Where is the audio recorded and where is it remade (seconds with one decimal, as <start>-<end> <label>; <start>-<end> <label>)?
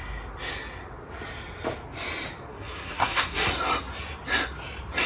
0.0-2.5 recorded; 2.5-3.5 remade; 3.5-5.1 recorded